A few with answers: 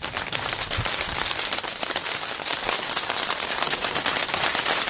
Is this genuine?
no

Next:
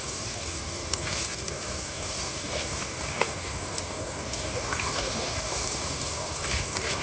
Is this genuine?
no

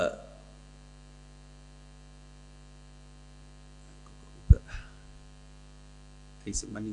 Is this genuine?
yes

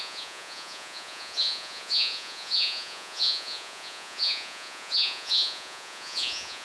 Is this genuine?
no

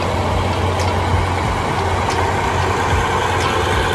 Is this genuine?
yes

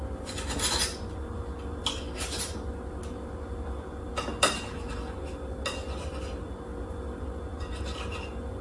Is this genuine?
yes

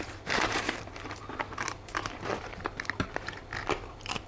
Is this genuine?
yes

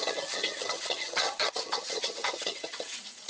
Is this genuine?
no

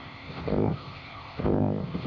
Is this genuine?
no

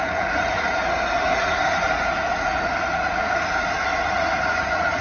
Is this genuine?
no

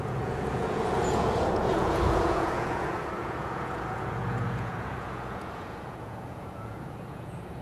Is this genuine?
no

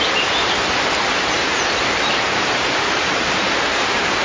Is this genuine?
no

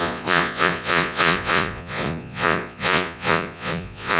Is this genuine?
no